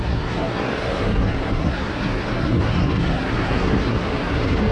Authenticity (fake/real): fake